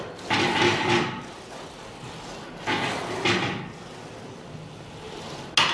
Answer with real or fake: real